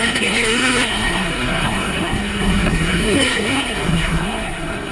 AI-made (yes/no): yes